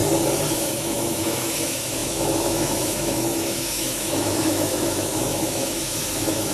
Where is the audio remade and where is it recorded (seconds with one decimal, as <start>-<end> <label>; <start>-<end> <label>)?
0.0-0.5 recorded; 0.5-6.5 remade